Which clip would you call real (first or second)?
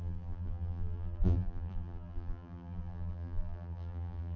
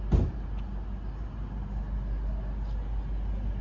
second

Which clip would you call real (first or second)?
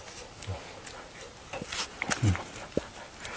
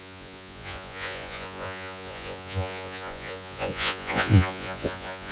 first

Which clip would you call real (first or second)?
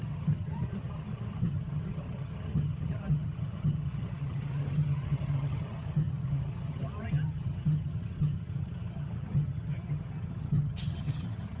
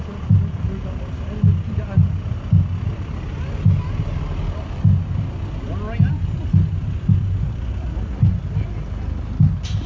second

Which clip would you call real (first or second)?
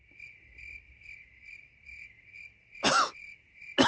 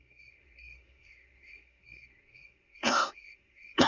first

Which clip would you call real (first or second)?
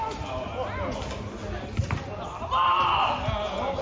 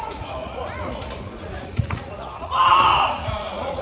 first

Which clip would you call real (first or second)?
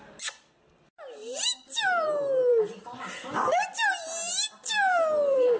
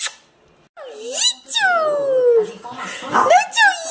second